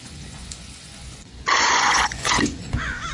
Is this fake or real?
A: fake